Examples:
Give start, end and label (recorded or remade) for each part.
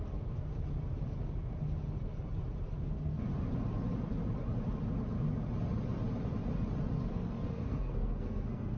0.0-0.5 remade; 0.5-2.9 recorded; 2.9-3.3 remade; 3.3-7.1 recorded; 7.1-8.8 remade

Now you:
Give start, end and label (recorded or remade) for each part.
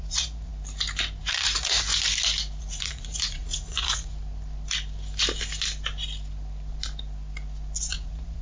0.0-0.5 remade; 0.5-1.2 recorded; 1.2-1.9 remade; 1.9-2.6 recorded; 2.6-4.1 remade; 4.1-7.9 recorded; 7.9-8.4 remade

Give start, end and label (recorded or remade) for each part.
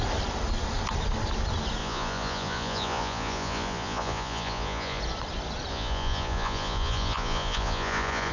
0.0-1.8 recorded; 1.8-5.0 remade; 5.0-5.7 recorded; 5.7-8.3 remade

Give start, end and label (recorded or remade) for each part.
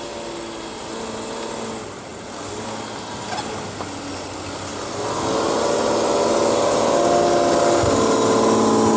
0.0-9.0 recorded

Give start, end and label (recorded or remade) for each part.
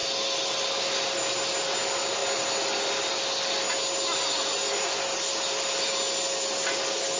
0.0-7.2 recorded